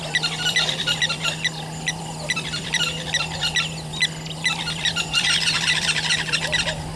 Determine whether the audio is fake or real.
fake